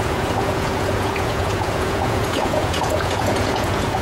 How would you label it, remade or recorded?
remade